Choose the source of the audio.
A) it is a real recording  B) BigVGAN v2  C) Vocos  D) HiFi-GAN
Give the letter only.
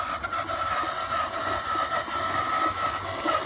A